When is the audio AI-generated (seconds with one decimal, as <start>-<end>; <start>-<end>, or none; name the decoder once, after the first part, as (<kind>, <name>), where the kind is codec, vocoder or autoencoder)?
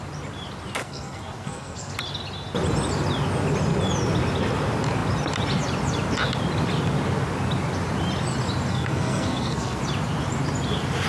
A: 0.8-1.9 (codec, SNAC); 8.7-9.8